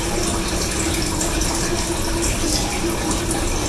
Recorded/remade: recorded